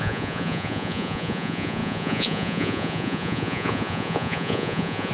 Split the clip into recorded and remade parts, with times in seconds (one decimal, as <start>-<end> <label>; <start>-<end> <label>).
0.0-5.1 remade